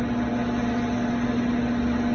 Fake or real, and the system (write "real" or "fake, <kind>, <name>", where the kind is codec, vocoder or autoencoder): real